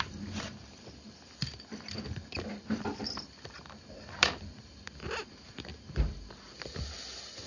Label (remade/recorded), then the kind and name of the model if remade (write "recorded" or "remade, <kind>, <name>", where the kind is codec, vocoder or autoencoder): remade, vocoder, BigVGAN v2